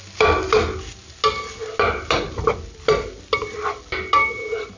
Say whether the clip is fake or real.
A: real